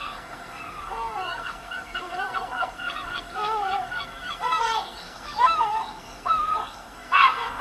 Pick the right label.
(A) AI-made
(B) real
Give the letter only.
A